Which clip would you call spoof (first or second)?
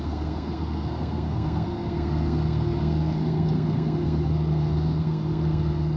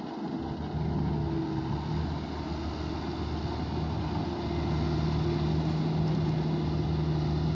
first